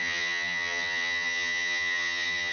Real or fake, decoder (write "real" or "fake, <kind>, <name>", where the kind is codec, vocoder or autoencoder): fake, vocoder, HiFi-GAN